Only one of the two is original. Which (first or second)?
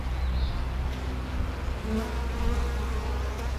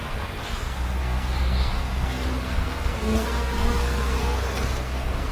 first